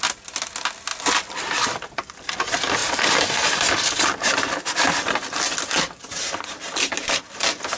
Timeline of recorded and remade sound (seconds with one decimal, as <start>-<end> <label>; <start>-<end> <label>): 0.0-7.8 recorded

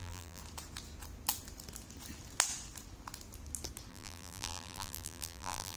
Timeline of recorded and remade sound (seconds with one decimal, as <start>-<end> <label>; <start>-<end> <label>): 0.0-0.4 remade; 0.4-3.9 recorded; 3.9-5.8 remade